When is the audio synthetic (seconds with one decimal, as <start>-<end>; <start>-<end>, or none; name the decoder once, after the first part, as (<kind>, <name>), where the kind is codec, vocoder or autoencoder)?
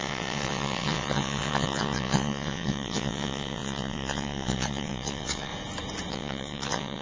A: 0.0-5.5 (vocoder, WaveNeXt); 6.1-7.0